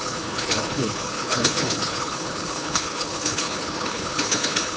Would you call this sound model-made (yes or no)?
yes